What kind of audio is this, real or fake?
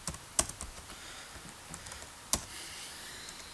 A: real